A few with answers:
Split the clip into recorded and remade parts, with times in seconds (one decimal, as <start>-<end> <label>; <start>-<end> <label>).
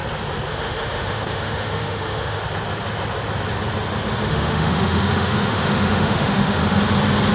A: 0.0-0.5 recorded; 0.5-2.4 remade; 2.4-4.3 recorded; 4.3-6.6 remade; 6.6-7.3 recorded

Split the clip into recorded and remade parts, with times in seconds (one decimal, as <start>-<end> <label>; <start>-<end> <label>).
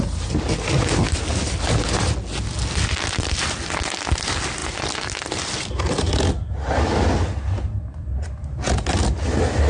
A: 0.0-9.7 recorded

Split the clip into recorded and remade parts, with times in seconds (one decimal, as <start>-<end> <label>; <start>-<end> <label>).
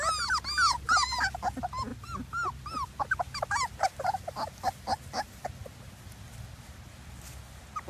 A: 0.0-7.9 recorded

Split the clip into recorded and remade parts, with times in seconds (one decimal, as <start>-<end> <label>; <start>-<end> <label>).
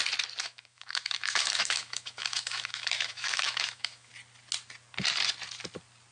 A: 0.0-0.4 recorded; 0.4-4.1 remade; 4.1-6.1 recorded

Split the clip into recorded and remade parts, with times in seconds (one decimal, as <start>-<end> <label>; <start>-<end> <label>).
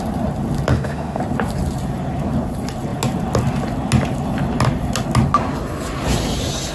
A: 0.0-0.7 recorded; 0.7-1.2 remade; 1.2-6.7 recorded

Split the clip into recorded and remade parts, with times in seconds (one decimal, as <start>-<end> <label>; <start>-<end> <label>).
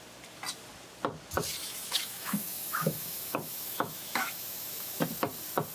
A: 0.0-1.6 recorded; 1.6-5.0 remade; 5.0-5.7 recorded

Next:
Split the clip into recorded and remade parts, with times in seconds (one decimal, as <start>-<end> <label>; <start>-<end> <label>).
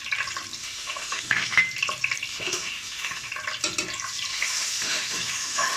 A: 0.0-0.6 recorded; 0.6-1.6 remade; 1.6-2.3 recorded; 2.3-3.3 remade; 3.3-4.3 recorded; 4.3-5.8 remade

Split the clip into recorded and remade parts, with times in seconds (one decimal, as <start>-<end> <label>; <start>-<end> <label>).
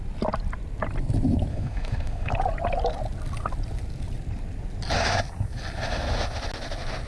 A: 0.0-1.5 recorded; 1.5-2.3 remade; 2.3-7.1 recorded